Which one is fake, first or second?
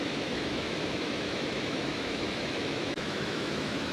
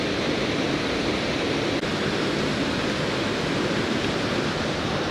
first